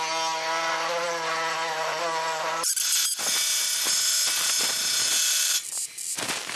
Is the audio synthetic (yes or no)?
no